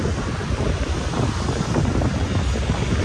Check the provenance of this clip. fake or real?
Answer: real